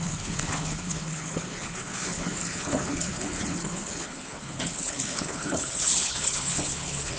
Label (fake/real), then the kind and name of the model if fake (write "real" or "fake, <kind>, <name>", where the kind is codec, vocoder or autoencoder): fake, codec, HILCodec